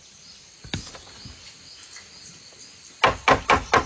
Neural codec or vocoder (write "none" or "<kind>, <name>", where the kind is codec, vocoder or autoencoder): none